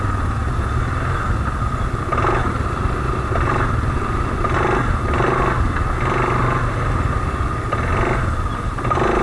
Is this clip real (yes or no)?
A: yes